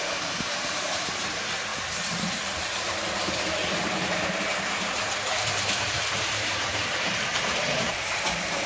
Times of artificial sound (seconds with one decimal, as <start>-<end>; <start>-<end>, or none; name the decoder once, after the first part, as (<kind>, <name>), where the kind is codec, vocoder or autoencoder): 0.0-1.7 (vocoder, BigVGAN v2); 3.5-8.7